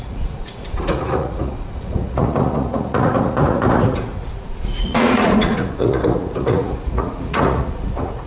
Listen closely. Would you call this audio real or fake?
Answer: fake